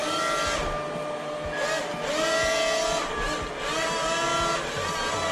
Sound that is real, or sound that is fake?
real